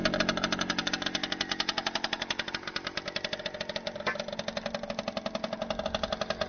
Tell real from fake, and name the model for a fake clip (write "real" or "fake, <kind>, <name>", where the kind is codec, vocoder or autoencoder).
real